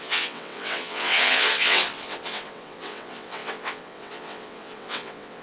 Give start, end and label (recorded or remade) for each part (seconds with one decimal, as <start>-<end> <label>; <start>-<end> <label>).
0.0-5.4 remade